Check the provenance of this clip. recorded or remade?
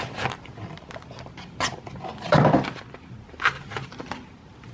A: recorded